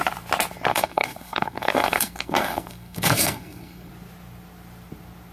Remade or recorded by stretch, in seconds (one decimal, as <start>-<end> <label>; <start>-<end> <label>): 0.0-0.7 recorded; 0.7-3.9 remade; 3.9-5.3 recorded